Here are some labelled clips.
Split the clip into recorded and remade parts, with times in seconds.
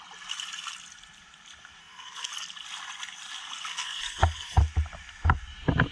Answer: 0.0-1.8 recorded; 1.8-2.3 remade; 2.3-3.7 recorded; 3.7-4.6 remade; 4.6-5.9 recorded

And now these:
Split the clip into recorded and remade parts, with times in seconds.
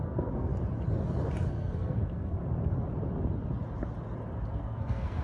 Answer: 0.0-0.5 remade; 0.5-1.5 recorded; 1.5-2.4 remade; 2.4-4.5 recorded; 4.5-5.2 remade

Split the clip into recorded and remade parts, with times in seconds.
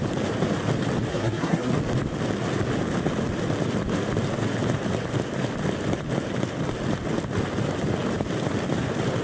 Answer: 0.0-1.1 recorded; 1.1-1.7 remade; 1.7-9.2 recorded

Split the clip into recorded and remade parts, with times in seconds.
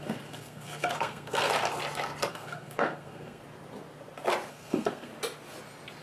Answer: 0.0-1.5 remade; 1.5-2.3 recorded; 2.3-3.4 remade; 3.4-4.5 recorded; 4.5-5.1 remade; 5.1-6.0 recorded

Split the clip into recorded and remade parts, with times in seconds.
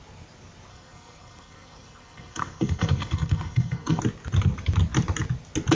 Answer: 0.0-0.7 recorded; 0.7-4.0 remade; 4.0-5.7 recorded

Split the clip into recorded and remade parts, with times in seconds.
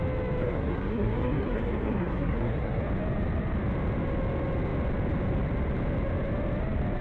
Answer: 0.0-0.4 recorded; 0.4-2.8 remade; 2.8-7.0 recorded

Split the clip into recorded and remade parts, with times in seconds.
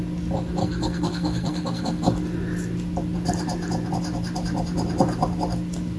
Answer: 0.0-0.6 recorded; 0.6-2.0 remade; 2.0-6.0 recorded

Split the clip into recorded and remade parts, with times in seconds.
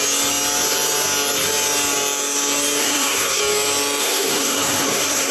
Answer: 0.0-2.8 recorded; 2.8-3.4 remade; 3.4-4.0 recorded; 4.0-5.3 remade